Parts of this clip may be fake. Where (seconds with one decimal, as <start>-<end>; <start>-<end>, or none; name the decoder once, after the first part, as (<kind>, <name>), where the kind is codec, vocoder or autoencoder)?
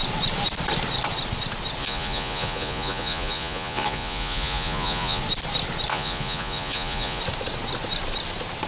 1.8-5.2 (vocoder, Vocos); 5.9-7.2